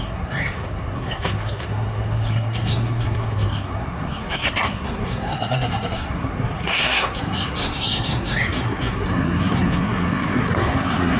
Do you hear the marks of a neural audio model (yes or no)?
yes